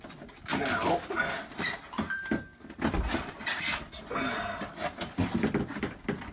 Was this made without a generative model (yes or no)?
yes